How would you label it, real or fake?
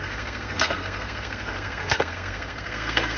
fake